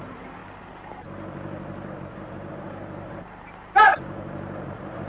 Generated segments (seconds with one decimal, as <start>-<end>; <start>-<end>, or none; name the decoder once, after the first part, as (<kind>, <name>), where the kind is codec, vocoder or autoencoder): 0.0-0.4 (vocoder, BigVGAN v2); 2.5-5.1